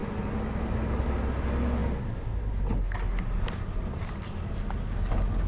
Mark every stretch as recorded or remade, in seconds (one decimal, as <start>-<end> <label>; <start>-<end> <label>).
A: 0.0-5.5 recorded